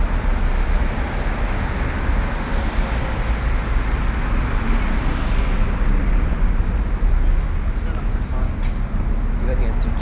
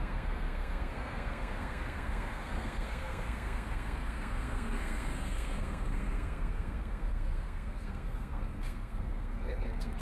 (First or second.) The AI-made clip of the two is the second